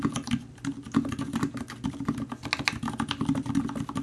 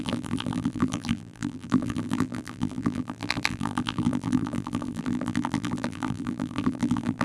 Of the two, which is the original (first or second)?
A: first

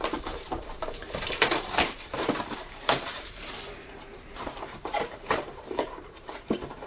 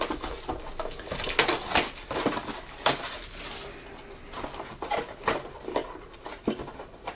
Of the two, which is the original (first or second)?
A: second